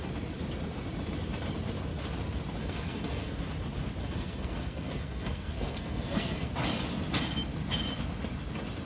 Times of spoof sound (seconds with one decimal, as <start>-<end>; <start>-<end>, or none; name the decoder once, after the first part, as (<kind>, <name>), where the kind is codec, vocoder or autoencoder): 2.6-3.4 (codec, SNAC); 4.0-6.5